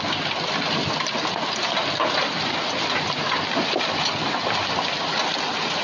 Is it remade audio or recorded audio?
recorded